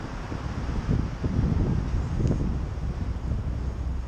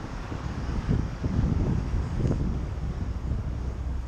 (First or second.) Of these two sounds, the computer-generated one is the second